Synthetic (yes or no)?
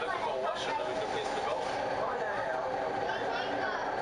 no